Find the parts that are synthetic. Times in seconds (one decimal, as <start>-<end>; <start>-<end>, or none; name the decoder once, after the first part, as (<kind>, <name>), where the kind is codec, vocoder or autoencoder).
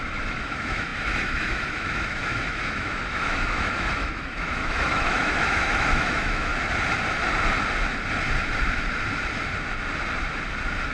0.0-6.5 (autoencoder, DAC-VAE)